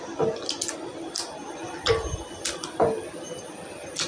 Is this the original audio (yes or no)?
yes